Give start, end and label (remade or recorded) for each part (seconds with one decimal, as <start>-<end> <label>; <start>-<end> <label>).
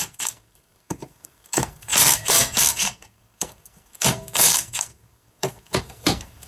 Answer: 0.0-6.5 remade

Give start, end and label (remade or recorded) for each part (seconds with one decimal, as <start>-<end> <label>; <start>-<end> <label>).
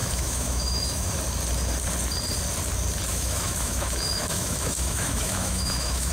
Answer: 0.0-1.1 remade; 1.1-3.1 recorded; 3.1-6.1 remade